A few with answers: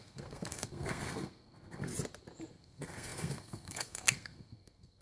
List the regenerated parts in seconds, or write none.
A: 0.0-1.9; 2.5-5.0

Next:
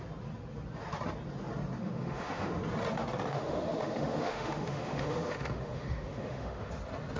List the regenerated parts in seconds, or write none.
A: 1.8-2.5; 3.3-6.7

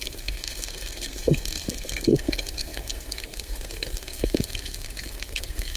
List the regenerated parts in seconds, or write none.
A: 0.0-5.8